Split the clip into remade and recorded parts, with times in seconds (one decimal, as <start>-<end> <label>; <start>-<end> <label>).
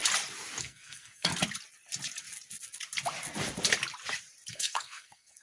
0.0-0.6 recorded; 0.6-1.3 remade; 1.3-4.5 recorded; 4.5-5.4 remade